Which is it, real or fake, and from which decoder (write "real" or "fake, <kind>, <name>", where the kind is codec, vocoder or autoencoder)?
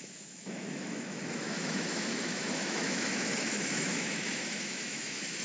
fake, autoencoder, DAC-VAE